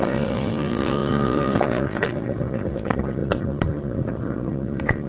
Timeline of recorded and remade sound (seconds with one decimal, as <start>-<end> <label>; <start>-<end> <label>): 0.0-5.1 remade